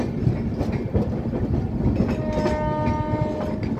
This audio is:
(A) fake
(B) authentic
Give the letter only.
B